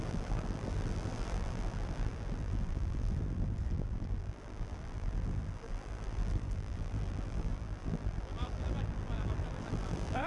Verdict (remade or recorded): remade